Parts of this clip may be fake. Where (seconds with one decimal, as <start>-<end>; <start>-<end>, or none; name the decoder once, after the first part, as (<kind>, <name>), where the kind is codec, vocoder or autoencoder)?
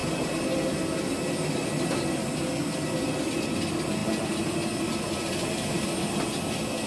none